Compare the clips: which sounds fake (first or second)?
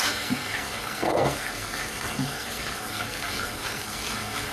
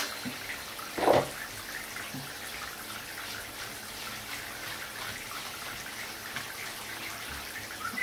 first